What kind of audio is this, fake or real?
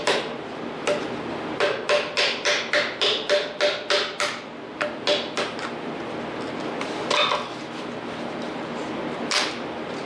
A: real